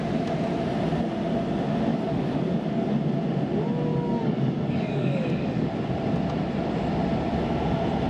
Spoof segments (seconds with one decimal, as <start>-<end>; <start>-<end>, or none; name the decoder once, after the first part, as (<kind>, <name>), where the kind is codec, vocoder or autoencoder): 1.9-2.9 (codec, DAC); 3.9-5.7

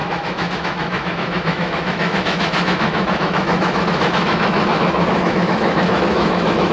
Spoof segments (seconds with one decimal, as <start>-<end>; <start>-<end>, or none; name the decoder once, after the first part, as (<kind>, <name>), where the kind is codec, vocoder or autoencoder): 0.0-6.7 (autoencoder, DAC-VAE)

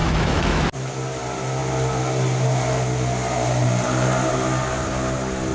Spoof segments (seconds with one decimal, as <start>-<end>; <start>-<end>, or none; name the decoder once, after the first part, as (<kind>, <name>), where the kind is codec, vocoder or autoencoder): 0.0-0.6 (autoencoder, DAC-VAE)